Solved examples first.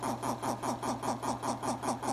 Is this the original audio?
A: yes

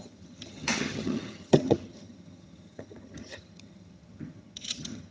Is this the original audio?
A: no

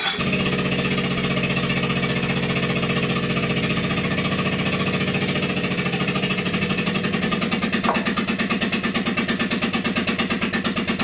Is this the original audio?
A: yes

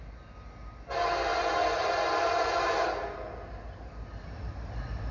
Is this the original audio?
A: yes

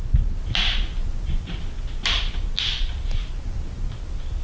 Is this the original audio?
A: yes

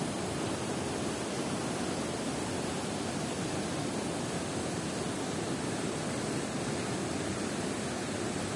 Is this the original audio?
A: yes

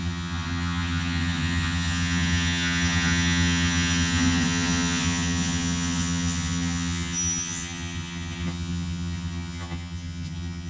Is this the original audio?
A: no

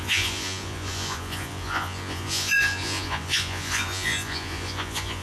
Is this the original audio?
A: no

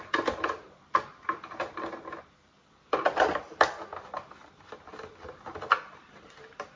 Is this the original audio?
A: no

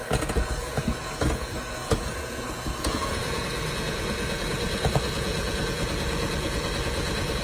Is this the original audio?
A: no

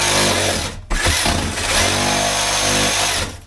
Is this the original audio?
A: yes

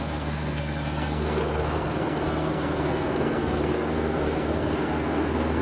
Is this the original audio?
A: no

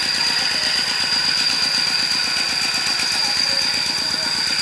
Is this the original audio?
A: yes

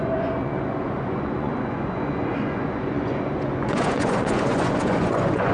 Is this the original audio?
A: no